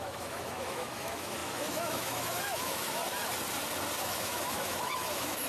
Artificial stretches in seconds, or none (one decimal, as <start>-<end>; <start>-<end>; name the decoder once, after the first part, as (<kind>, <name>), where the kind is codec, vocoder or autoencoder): 0.0-3.0 (autoencoder, DAC-VAE); 4.0-5.5